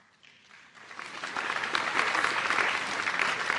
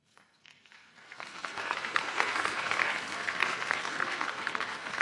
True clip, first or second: first